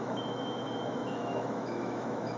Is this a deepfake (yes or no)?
yes